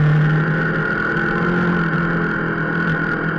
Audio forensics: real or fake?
real